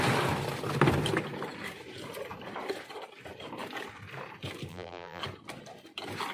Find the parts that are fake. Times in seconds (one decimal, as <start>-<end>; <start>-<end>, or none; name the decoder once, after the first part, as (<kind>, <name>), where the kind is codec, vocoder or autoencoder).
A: 4.7-5.2 (vocoder, BigVGAN v2)

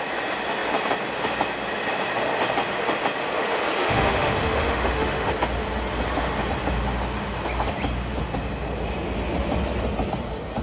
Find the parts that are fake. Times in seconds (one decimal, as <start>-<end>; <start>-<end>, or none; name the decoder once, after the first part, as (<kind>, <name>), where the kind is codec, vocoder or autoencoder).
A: 3.8-5.3 (autoencoder, DAC-VAE)

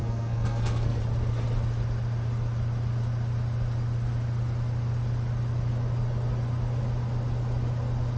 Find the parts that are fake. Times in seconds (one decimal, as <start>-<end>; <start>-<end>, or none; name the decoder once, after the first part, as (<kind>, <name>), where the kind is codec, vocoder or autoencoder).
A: 0.0-1.0 (codec, SNAC)

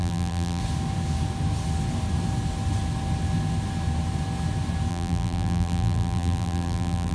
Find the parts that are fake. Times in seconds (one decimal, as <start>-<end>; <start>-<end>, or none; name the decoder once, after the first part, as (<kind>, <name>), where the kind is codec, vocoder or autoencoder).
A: 0.0-0.6 (vocoder, BigVGAN v2); 4.9-7.1